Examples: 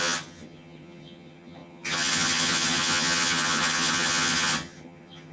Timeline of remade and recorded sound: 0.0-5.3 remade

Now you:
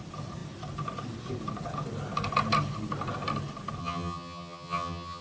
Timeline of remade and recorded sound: 0.0-3.8 recorded; 3.8-5.2 remade

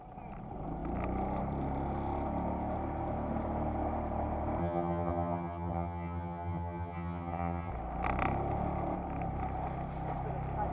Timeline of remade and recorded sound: 0.0-4.6 recorded; 4.6-7.7 remade; 7.7-10.7 recorded

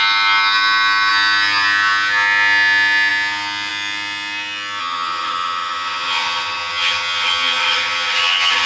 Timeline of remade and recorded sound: 0.0-4.8 recorded; 4.8-8.7 remade